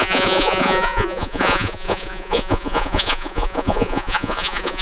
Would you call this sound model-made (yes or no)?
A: yes